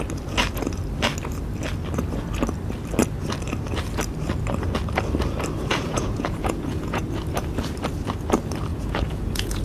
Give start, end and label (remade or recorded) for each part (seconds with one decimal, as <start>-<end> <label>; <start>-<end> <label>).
0.0-5.7 recorded; 5.7-7.0 remade; 7.0-8.7 recorded; 8.7-9.6 remade